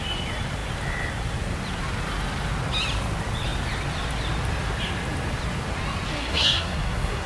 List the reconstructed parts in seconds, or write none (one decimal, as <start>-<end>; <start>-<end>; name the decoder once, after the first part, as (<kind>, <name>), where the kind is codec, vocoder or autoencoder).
6.2-7.3 (codec, SNAC)